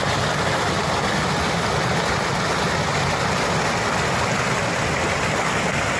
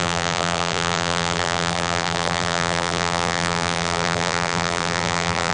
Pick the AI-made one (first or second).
second